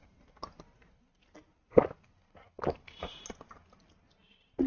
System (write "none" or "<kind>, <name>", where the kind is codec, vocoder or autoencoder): none